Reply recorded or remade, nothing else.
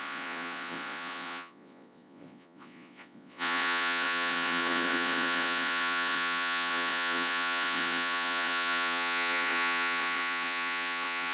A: remade